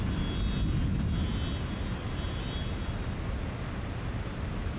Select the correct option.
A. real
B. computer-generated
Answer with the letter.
A